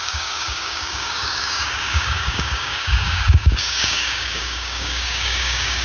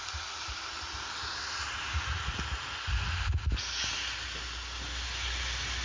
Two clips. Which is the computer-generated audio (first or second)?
first